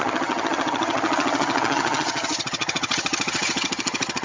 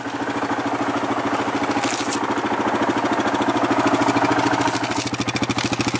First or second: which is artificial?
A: first